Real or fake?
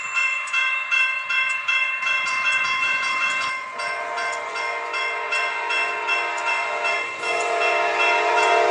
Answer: fake